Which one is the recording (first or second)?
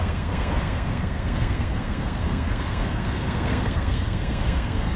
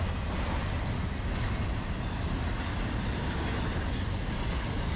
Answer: second